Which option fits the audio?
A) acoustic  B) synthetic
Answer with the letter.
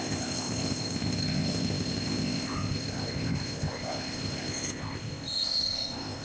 B